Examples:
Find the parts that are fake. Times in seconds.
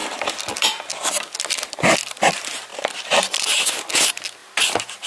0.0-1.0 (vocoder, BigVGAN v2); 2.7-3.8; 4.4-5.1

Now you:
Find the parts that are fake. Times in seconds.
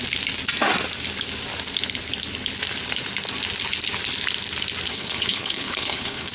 4.9-6.3 (codec, HILCodec)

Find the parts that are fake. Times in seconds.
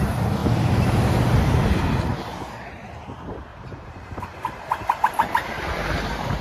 3.5-4.7 (vocoder, BigVGAN v2)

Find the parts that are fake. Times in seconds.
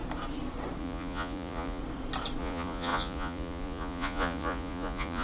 0.8-1.8 (vocoder, Vocos); 2.4-5.2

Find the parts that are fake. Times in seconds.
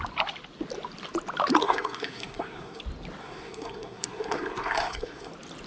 1.6-2.8 (codec, SNAC); 3.2-5.3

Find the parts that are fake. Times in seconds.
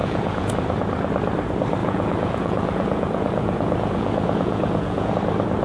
0.0-0.5 (vocoder, Vocos); 1.8-5.1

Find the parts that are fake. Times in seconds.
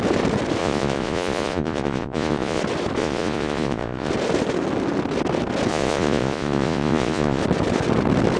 0.6-2.6 (vocoder, Vocos); 3.0-4.1; 5.7-7.4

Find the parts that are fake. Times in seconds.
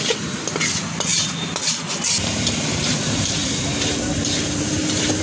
3.4-5.2 (vocoder, BigVGAN v2)